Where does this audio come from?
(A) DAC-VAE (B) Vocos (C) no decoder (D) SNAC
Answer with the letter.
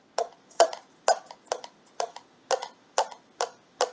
C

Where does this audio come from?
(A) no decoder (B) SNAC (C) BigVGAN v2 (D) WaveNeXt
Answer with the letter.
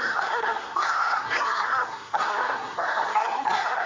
B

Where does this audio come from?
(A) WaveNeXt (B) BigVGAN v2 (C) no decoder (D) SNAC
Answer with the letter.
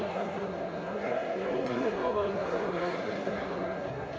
D